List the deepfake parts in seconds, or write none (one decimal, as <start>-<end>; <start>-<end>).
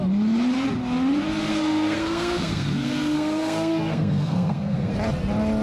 1.5-4.9